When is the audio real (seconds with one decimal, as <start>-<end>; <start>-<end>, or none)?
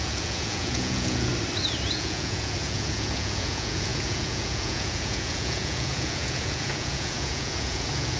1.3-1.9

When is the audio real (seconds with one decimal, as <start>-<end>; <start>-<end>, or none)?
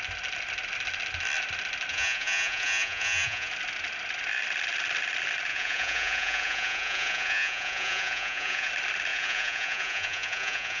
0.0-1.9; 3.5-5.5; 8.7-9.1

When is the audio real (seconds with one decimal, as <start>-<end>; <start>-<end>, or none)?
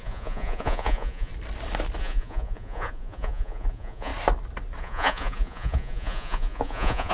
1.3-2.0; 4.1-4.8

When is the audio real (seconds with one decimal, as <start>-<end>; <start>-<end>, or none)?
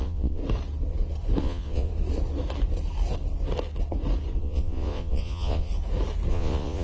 0.4-1.4; 1.9-4.4; 5.7-6.3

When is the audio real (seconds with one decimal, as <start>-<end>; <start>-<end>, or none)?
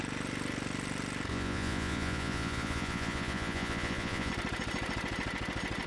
0.0-1.3; 4.3-5.9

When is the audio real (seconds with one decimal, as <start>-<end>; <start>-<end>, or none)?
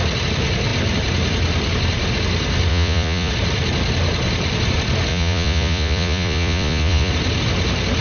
0.0-2.7; 3.3-5.1; 7.1-8.0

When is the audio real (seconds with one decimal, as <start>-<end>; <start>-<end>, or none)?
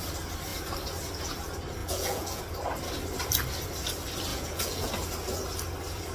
0.0-1.8; 2.4-4.3; 4.9-6.1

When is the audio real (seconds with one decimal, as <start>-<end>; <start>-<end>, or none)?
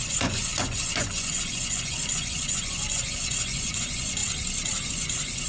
4.2-4.9